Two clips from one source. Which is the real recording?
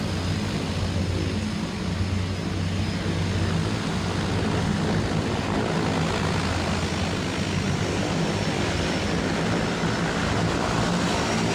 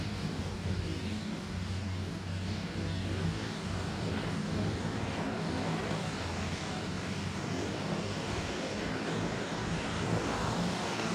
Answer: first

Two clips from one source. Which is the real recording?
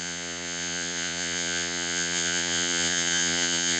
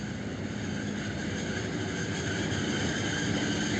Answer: second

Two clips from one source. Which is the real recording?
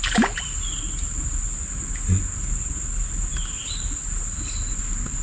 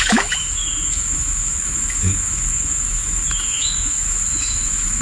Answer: first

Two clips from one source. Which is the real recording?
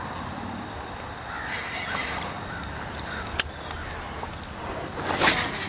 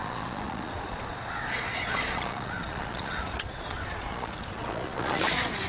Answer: first